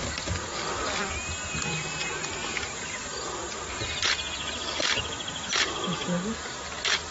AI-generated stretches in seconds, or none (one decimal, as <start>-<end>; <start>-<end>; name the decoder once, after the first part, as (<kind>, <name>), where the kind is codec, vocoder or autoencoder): 2.4-3.4 (vocoder, BigVGAN v2)